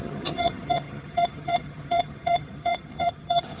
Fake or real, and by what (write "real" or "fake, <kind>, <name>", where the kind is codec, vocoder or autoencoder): fake, vocoder, HiFi-GAN